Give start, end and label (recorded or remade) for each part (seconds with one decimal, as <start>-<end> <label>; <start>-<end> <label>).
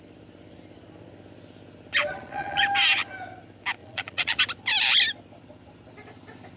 0.0-2.1 recorded; 2.1-2.6 remade; 2.6-3.8 recorded; 3.8-4.4 remade; 4.4-6.6 recorded